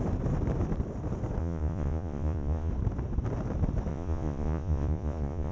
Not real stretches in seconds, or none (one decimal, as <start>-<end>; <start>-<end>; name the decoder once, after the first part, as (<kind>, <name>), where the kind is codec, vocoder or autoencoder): 1.4-2.7 (vocoder, Vocos); 3.9-5.5